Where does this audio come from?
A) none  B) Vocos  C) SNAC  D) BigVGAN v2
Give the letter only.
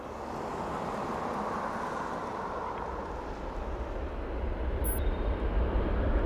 A